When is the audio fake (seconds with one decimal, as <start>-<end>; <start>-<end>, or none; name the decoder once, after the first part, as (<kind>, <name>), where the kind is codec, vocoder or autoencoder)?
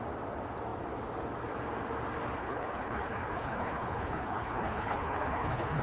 2.4-5.8 (codec, HILCodec)